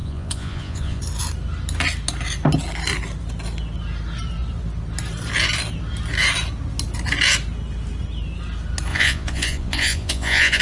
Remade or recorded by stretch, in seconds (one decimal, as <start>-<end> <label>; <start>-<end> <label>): 0.0-1.0 remade; 1.0-8.9 recorded; 8.9-10.6 remade